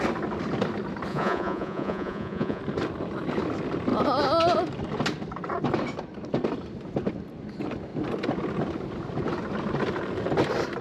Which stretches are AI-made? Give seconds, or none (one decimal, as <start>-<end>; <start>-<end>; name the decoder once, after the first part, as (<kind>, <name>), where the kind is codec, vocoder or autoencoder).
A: 1.1-2.6 (vocoder, Vocos)